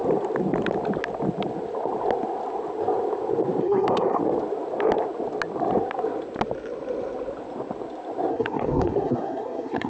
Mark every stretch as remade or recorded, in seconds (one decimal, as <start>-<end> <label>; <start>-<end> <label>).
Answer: 0.0-3.6 recorded; 3.6-4.2 remade; 4.2-8.3 recorded; 8.3-9.9 remade